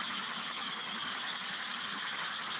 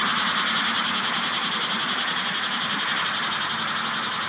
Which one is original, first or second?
second